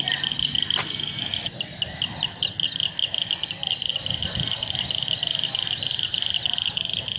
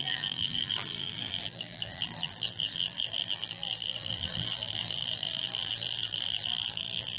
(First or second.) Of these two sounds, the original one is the first